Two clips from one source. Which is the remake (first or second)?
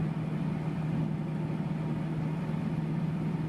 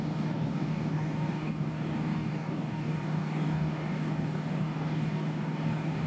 second